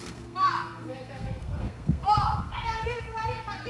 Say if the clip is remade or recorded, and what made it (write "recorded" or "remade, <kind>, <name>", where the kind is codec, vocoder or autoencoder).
remade, codec, SNAC